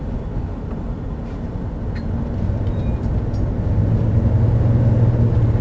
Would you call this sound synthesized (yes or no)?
no